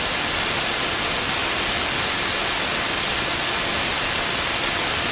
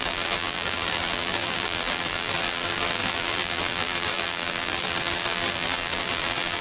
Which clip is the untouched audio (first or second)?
first